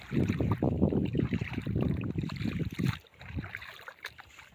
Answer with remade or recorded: remade